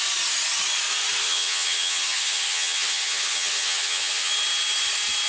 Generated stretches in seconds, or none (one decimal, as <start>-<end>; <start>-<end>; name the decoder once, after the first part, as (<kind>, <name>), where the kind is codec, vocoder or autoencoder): 1.2-4.3 (vocoder, HiFi-GAN)